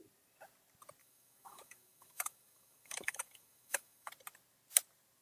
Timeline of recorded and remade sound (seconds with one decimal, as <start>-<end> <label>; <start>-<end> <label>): 0.0-1.0 recorded; 1.0-4.1 remade; 4.1-5.2 recorded